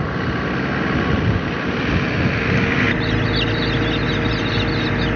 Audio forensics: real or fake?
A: real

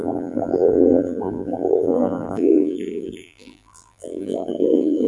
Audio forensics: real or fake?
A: fake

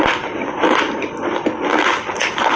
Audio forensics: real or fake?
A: real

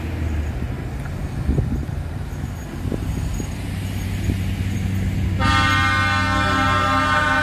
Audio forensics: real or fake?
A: real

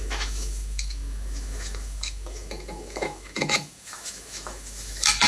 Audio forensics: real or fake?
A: fake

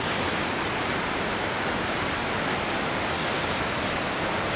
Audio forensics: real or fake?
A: real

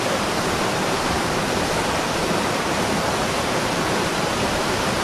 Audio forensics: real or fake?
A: fake